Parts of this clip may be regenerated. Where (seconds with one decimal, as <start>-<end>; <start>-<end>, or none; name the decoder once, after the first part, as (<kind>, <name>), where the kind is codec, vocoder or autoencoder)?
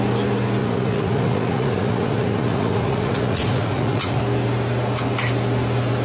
0.6-4.2 (vocoder, Vocos)